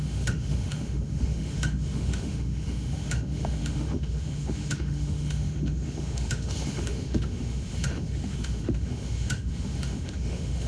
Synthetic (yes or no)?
yes